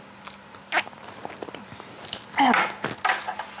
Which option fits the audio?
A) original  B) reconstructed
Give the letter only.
A